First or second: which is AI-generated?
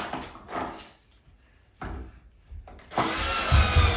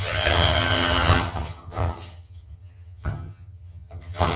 second